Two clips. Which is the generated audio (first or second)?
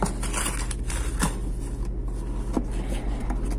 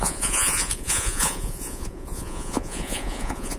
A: second